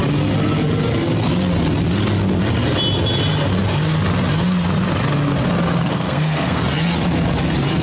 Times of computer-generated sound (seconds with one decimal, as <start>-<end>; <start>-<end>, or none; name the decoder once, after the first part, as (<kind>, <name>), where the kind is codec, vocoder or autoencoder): 5.9-6.6 (codec, SNAC)